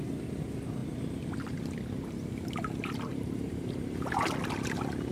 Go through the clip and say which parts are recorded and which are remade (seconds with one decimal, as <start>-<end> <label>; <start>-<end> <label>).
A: 0.0-3.1 recorded; 3.1-4.2 remade; 4.2-5.1 recorded